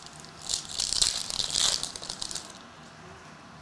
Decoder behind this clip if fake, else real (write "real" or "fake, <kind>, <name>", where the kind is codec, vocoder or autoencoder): real